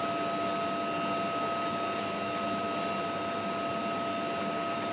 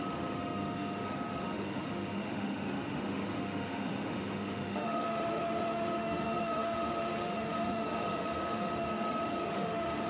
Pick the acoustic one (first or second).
first